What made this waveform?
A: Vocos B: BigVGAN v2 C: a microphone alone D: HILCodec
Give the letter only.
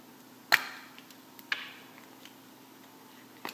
C